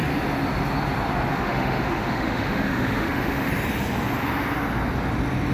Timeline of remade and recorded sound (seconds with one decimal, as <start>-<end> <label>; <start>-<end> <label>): 0.0-1.3 recorded; 1.3-3.5 remade; 3.5-5.5 recorded